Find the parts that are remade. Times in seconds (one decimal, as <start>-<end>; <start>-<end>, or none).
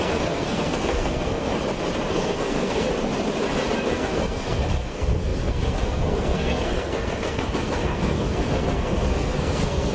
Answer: 0.0-1.5; 2.1-2.9; 3.9-9.9